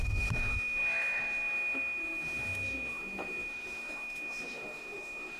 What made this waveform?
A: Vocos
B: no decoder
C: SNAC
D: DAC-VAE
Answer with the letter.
D